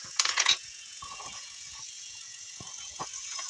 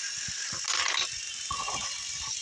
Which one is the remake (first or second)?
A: first